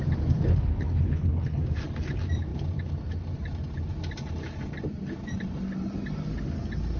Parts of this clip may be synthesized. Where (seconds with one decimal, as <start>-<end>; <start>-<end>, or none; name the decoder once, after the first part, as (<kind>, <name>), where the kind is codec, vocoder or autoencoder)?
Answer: 0.5-1.6 (codec, HILCodec)